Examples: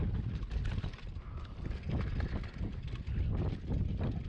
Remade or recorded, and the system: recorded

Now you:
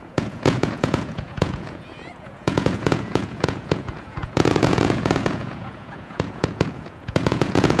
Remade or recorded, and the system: remade, vocoder, Vocos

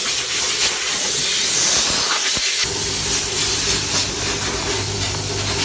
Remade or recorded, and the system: recorded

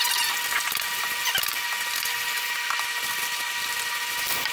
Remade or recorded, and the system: recorded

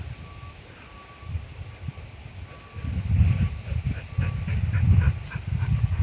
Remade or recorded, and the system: recorded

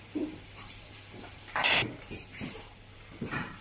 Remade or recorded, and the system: remade, vocoder, BigVGAN v2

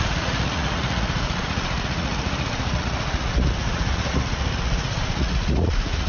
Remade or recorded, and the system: remade, vocoder, Vocos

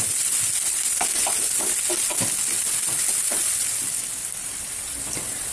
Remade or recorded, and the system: recorded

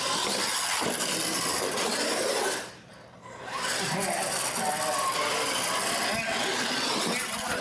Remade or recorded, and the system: recorded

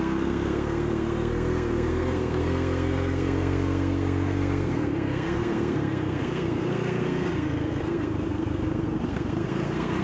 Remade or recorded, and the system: remade, codec, SNAC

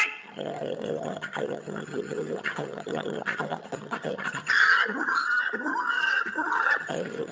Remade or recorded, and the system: remade, vocoder, HiFi-GAN